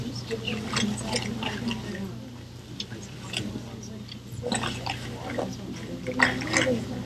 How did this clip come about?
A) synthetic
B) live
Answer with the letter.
B